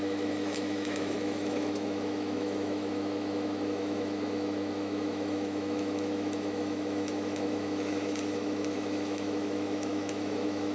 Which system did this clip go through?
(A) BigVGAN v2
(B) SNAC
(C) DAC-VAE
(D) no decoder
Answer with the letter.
C